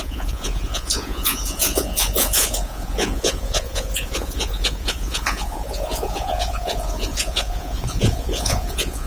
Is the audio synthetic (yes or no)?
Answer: yes